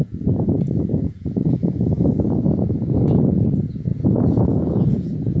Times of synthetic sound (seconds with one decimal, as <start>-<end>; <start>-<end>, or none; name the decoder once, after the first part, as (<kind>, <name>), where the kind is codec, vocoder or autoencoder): 0.0-5.4 (vocoder, Vocos)